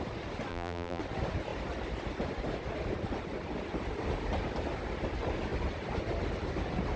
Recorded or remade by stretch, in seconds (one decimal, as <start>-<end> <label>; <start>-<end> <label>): 0.0-0.5 recorded; 0.5-1.0 remade; 1.0-7.0 recorded